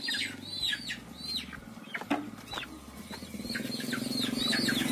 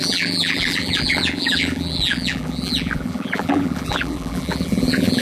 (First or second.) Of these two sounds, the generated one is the second